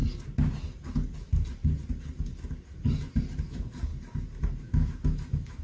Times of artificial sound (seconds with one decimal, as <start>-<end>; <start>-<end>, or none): 3.4-3.9; 4.6-5.6